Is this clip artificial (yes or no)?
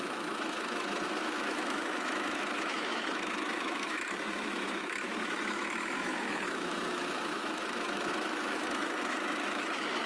yes